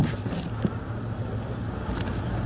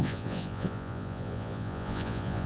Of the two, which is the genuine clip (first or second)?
first